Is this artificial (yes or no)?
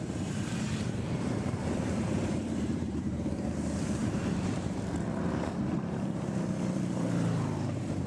yes